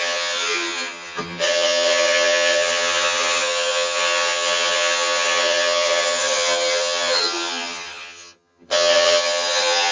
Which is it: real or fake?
fake